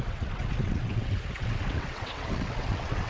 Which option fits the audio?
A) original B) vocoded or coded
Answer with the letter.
B